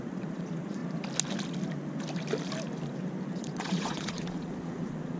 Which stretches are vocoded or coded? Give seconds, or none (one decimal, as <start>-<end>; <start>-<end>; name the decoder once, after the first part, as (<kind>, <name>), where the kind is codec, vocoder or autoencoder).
0.0-0.8 (vocoder, Vocos); 3.3-5.2